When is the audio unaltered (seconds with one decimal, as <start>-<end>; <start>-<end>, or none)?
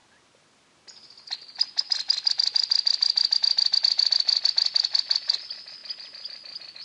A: 0.0-6.8